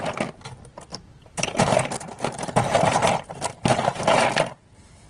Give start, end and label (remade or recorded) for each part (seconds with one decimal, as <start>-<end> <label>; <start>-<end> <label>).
0.0-0.9 recorded; 0.9-4.0 remade; 4.0-5.1 recorded